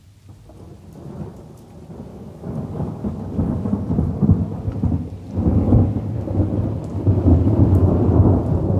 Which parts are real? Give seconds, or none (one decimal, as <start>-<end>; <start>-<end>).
0.0-2.1; 3.8-5.5; 6.5-6.9; 7.9-8.8